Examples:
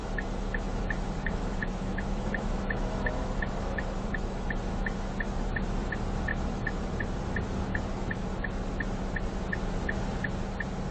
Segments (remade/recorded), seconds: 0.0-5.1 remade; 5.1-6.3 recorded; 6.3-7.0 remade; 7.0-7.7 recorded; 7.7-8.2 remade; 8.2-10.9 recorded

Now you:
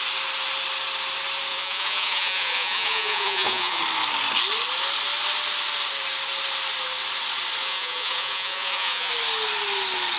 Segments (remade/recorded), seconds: 0.0-1.5 recorded; 1.5-3.8 remade; 3.8-7.6 recorded; 7.6-9.1 remade; 9.1-10.2 recorded

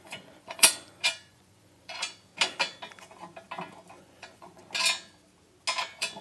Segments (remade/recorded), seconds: 0.0-2.3 remade; 2.3-4.0 recorded; 4.0-4.6 remade; 4.6-5.8 recorded; 5.8-6.2 remade